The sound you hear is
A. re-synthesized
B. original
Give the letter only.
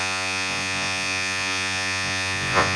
A